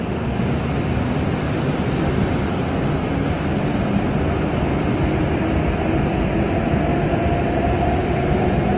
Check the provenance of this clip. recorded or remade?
recorded